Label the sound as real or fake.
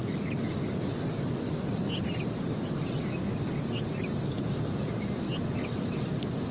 real